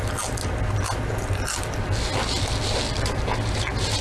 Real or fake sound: real